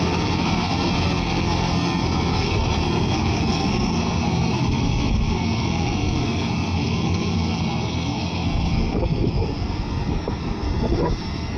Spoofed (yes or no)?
yes